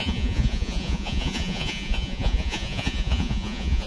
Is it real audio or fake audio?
fake